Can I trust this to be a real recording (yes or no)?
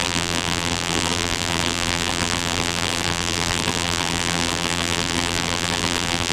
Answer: no